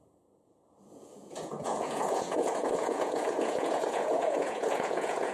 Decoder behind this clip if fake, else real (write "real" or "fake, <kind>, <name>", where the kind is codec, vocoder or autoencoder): fake, vocoder, Vocos